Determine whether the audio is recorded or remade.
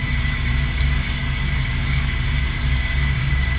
remade